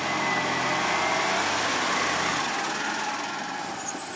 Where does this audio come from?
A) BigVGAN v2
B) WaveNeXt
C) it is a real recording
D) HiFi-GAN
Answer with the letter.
C